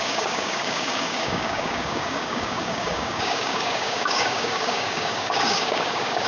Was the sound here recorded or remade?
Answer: remade